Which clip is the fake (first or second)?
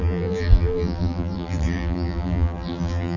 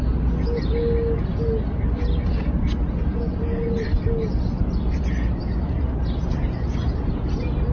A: first